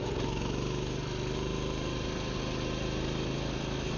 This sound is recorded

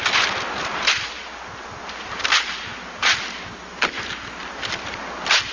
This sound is recorded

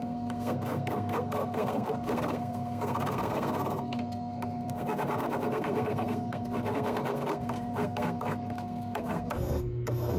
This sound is remade